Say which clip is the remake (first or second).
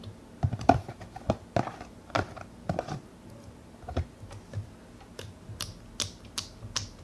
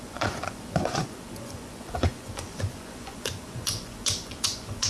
second